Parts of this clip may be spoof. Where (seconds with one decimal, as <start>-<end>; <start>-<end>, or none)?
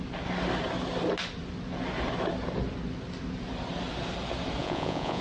4.6-5.2